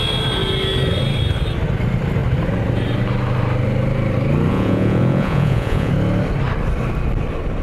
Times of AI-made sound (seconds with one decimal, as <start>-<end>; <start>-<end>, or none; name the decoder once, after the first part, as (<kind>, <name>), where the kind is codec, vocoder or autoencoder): 4.5-5.9 (vocoder, Vocos)